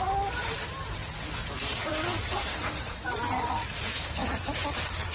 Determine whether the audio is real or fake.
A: real